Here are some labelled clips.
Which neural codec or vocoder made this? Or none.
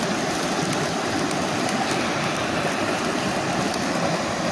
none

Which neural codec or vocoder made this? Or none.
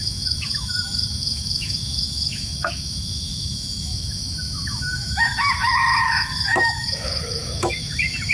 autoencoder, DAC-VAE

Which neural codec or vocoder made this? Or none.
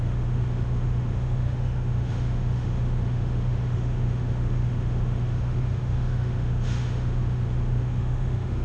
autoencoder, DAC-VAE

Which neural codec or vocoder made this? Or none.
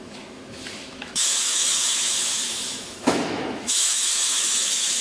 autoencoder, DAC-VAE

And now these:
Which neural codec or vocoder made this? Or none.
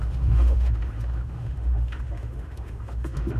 autoencoder, DAC-VAE